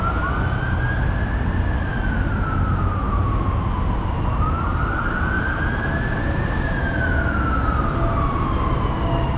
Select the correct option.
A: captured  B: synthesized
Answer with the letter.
A